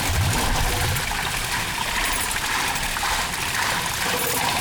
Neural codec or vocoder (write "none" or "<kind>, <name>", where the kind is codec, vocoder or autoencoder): none